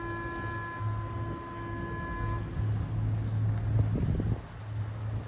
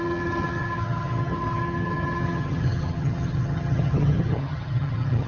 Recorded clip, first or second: first